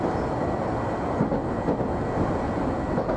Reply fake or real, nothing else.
real